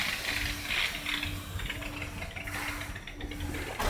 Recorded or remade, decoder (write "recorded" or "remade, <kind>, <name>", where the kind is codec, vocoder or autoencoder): recorded